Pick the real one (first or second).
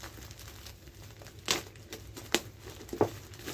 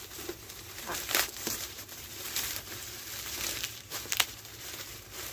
first